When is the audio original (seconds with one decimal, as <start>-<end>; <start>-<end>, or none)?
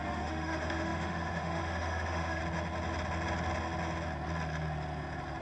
2.4-5.4